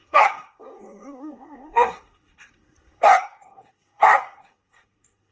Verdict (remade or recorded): remade